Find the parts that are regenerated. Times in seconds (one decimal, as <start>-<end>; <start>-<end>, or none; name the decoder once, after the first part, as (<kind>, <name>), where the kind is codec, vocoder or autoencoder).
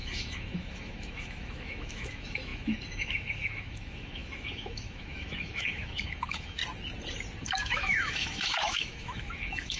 0.0-6.6 (autoencoder, DAC-VAE); 7.4-9.8